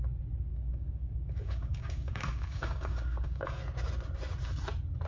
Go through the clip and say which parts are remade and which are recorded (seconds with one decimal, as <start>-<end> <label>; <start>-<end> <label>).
0.0-0.5 recorded; 0.5-3.6 remade; 3.6-5.1 recorded